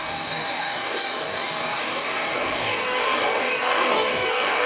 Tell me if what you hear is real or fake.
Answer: fake